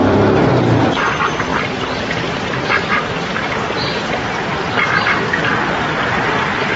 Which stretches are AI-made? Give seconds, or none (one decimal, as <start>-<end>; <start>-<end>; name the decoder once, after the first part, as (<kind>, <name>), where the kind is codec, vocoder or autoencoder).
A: 0.0-0.5 (vocoder, BigVGAN v2); 1.5-4.3